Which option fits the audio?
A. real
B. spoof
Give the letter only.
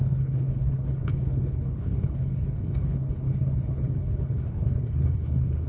B